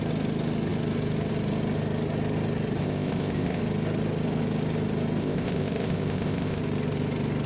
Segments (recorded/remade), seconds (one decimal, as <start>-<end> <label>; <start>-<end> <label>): 0.0-2.8 recorded; 2.8-3.6 remade; 3.6-5.2 recorded; 5.2-6.6 remade; 6.6-7.5 recorded